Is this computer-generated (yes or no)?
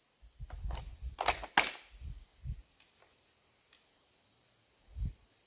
no